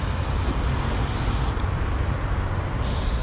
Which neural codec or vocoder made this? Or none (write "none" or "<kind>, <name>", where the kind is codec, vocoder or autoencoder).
none